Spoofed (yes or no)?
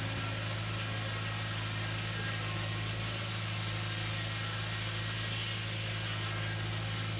no